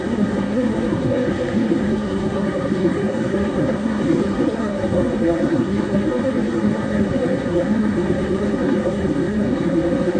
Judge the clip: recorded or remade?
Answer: remade